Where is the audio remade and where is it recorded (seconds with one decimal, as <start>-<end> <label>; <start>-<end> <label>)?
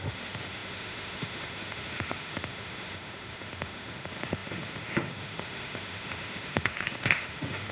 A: 0.0-7.7 remade